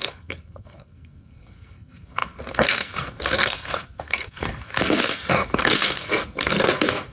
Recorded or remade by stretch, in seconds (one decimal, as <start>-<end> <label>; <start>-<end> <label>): 0.0-7.1 remade